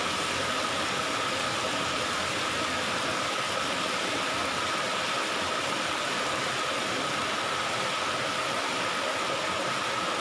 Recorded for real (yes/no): yes